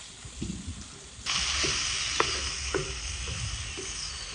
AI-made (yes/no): no